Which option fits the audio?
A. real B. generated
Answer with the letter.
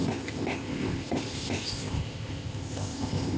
B